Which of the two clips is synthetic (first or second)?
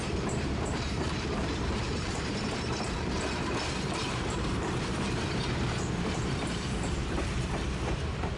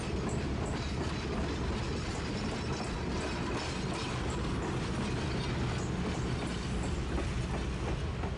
first